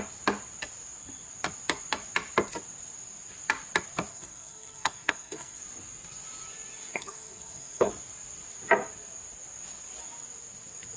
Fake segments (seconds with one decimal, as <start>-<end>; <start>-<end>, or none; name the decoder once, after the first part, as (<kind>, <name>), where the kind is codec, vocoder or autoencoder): 4.1-5.6 (codec, SNAC); 6.9-7.9